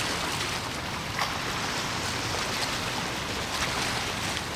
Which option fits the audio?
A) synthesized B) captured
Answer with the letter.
B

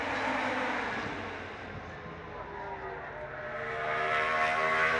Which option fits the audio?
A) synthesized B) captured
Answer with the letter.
B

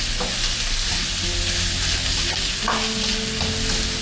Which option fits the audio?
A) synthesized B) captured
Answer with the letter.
B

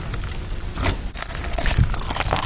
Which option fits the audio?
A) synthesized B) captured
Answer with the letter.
B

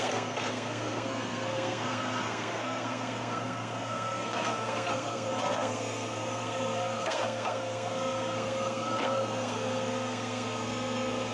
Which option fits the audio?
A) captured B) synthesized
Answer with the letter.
B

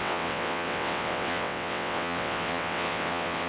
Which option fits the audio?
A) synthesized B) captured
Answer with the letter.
A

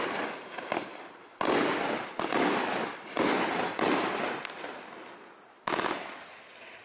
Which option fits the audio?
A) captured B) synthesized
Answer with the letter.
A